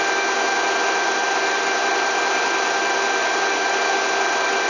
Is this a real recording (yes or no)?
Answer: yes